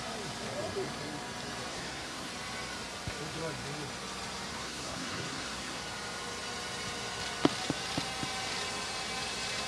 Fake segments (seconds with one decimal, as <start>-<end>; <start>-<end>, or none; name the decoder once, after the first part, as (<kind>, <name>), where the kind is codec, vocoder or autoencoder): 1.7-2.3 (codec, SNAC); 4.5-5.8

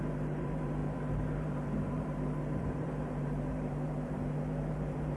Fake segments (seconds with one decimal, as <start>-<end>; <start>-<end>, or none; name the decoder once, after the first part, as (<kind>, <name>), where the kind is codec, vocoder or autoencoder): 0.0-5.2 (vocoder, BigVGAN v2)

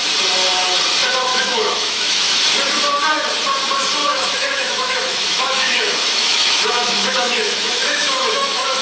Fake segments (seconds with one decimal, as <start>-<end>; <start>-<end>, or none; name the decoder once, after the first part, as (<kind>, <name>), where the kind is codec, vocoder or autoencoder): 1.3-2.4 (autoencoder, DAC-VAE); 4.0-8.8

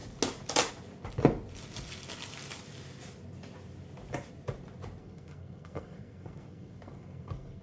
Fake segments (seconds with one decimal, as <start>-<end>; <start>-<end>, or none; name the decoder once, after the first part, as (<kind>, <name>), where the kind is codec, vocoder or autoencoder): 5.0-7.6 (codec, SNAC)

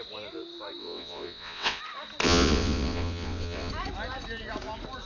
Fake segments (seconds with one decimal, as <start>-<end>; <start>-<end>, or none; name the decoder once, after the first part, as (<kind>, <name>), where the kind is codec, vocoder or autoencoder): 0.8-1.8 (vocoder, WaveNeXt); 2.2-3.7

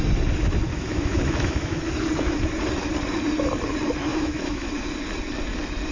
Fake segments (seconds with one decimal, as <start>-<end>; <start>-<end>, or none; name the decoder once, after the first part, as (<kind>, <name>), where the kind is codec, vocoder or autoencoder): 0.7-1.8 (autoencoder, DAC-VAE); 4.1-4.7

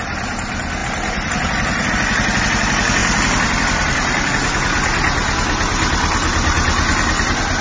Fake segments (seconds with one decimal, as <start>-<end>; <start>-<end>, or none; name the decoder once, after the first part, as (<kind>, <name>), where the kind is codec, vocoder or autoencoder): 0.8-1.9 (vocoder, BigVGAN v2); 3.0-4.3

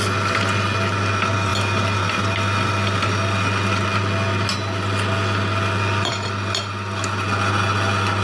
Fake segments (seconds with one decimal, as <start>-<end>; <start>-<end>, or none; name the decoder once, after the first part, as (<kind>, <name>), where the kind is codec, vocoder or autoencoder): none